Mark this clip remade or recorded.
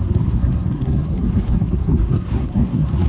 remade